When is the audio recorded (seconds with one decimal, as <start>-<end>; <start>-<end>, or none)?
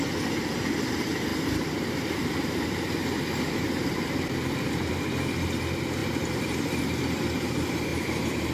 0.0-1.3; 4.9-6.0; 6.8-7.9